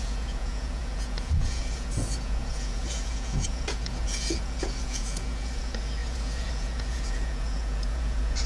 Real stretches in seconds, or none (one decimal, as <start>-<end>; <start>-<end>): none